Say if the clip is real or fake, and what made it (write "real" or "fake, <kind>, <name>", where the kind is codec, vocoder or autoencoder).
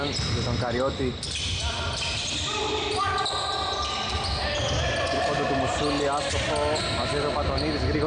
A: real